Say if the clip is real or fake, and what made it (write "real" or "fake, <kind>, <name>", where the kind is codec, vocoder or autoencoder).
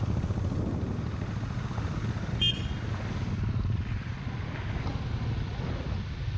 real